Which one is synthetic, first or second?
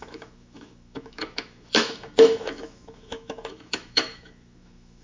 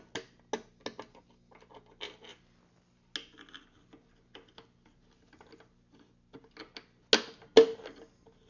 first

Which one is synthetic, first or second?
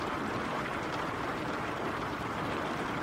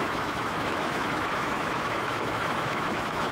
second